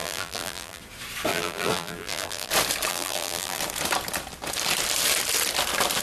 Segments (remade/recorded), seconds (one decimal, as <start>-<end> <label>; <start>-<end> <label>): 0.0-0.8 remade; 0.8-1.3 recorded; 1.3-2.5 remade; 2.5-2.9 recorded; 2.9-3.6 remade; 3.6-6.0 recorded